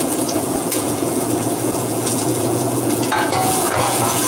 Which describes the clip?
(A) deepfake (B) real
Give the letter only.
A